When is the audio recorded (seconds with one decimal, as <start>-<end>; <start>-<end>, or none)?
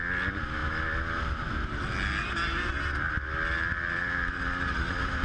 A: 0.6-3.7